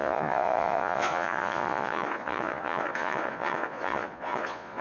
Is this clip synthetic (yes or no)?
yes